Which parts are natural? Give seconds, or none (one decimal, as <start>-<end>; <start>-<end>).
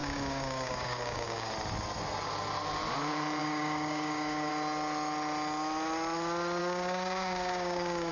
1.5-3.4; 4.5-6.6